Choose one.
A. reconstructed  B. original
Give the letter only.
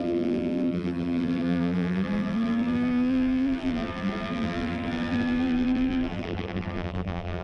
A